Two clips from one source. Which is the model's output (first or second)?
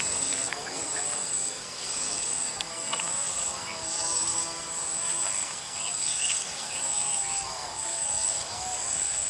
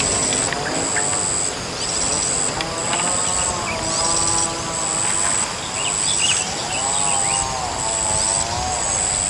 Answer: first